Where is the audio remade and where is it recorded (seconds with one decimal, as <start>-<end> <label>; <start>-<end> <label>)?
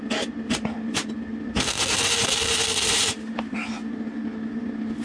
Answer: 0.0-5.0 recorded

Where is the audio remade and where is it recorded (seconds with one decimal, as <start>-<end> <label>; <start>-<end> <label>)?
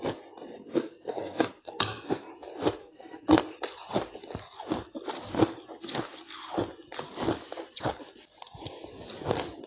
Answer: 0.0-0.7 recorded; 0.7-2.3 remade; 2.3-2.8 recorded; 2.8-3.4 remade; 3.4-9.7 recorded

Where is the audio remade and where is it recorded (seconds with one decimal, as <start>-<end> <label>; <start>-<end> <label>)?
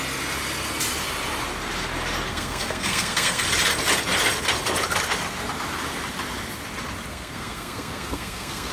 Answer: 0.0-2.3 recorded; 2.3-3.4 remade; 3.4-7.1 recorded; 7.1-8.7 remade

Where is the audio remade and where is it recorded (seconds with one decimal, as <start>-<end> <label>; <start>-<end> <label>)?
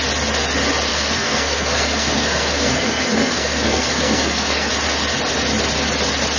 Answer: 0.0-0.9 recorded; 0.9-4.7 remade; 4.7-6.4 recorded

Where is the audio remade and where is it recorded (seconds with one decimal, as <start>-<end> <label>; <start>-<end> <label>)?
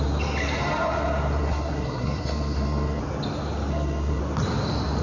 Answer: 0.0-1.4 recorded; 1.4-3.0 remade; 3.0-3.7 recorded; 3.7-4.2 remade; 4.2-5.0 recorded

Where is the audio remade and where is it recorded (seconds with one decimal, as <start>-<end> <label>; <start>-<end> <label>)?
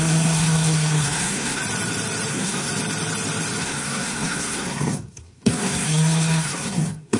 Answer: 0.0-1.6 remade; 1.6-2.3 recorded; 2.3-2.7 remade; 2.7-3.6 recorded; 3.6-7.2 remade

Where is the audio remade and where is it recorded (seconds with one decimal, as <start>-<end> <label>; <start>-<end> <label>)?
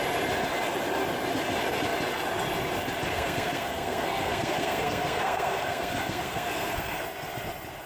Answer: 0.0-3.1 recorded; 3.1-7.0 remade; 7.0-7.9 recorded